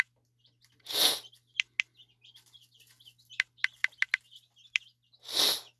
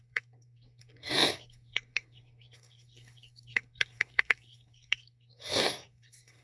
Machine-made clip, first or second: second